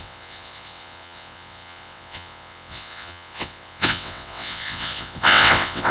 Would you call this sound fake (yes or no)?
yes